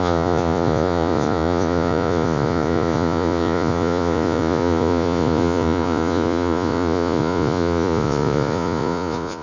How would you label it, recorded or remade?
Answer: remade